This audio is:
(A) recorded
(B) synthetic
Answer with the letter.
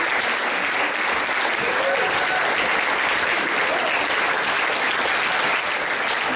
A